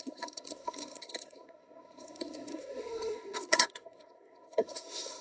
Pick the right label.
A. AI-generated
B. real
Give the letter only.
A